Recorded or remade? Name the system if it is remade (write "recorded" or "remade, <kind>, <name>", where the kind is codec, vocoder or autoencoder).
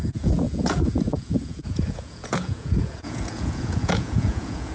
remade, vocoder, Vocos